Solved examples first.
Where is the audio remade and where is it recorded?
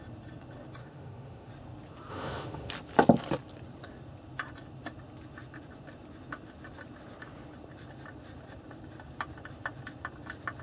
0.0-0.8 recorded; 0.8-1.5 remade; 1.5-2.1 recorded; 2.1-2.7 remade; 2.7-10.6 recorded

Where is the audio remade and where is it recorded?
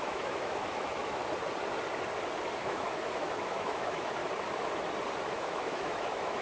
0.0-1.2 remade; 1.2-2.6 recorded; 2.6-4.2 remade; 4.2-5.3 recorded; 5.3-6.4 remade